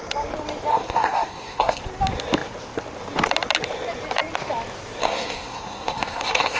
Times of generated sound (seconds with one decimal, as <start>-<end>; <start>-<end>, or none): 0.7-1.8; 5.0-6.6